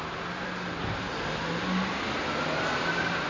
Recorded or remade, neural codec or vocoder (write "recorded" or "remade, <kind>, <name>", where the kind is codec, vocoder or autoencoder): recorded